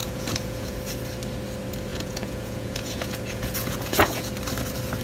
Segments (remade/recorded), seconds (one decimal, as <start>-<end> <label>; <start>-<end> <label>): 0.0-0.8 remade; 0.8-1.9 recorded; 1.9-4.3 remade; 4.3-5.0 recorded